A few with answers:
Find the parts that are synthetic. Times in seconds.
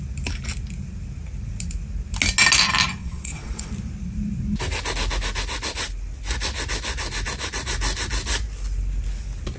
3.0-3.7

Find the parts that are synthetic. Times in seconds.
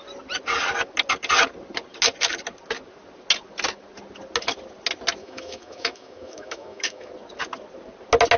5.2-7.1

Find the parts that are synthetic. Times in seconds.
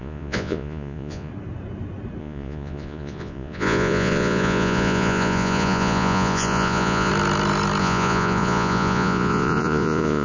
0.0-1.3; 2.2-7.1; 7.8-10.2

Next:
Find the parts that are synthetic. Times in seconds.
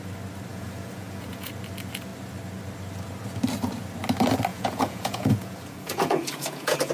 0.5-1.5; 4.5-6.9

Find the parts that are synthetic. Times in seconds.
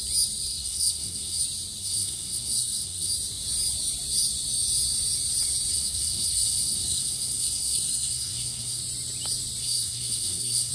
0.5-1.4; 1.8-3.1; 5.7-8.8; 9.6-10.7